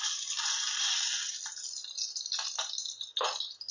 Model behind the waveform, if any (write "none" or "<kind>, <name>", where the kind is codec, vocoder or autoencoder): none